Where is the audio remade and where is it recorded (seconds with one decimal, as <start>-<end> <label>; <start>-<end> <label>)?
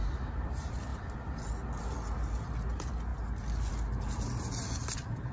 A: 0.0-5.3 recorded